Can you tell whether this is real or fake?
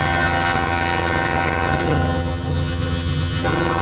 fake